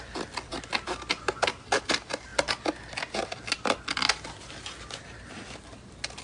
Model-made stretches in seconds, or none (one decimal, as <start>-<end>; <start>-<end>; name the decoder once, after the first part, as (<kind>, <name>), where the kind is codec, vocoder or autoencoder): none